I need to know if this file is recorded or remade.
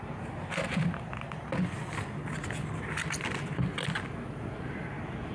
remade